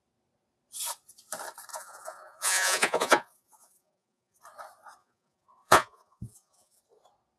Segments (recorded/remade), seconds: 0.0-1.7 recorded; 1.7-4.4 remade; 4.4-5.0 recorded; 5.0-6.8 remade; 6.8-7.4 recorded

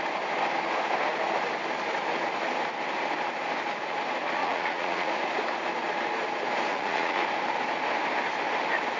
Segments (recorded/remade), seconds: 0.0-4.4 recorded; 4.4-5.1 remade; 5.1-6.7 recorded; 6.7-7.2 remade; 7.2-9.0 recorded